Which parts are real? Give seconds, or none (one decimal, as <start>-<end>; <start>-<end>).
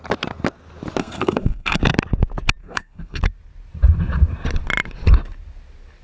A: 0.0-1.0; 1.8-2.6; 3.2-6.0